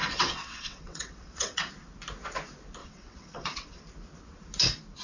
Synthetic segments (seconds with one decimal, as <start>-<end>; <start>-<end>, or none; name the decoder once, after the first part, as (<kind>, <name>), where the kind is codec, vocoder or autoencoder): 0.0-1.7 (vocoder, WaveNeXt); 2.8-3.8